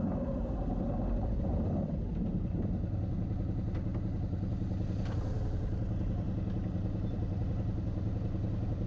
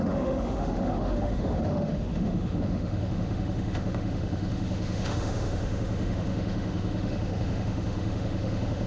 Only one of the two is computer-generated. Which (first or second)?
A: second